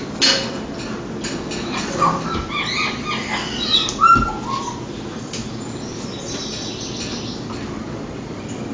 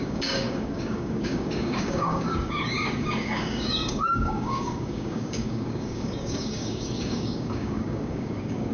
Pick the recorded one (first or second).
first